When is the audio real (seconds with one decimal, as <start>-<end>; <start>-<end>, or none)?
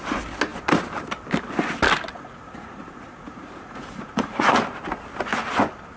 0.0-2.1; 4.6-6.0